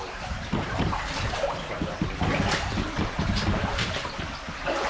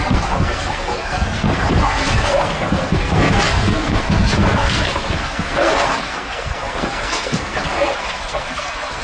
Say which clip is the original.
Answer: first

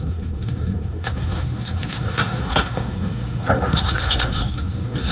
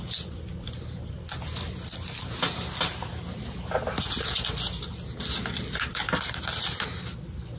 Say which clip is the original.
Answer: second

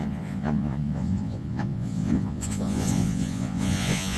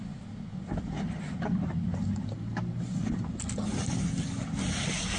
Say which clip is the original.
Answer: second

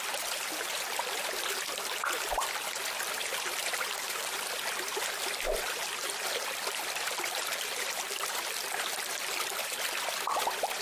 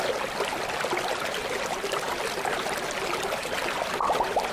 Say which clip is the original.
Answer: second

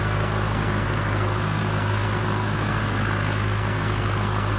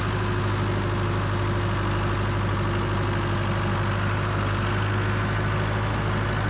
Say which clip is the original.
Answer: second